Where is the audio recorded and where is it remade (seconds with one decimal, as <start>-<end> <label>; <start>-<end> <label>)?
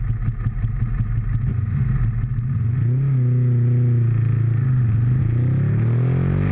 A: 0.0-6.5 recorded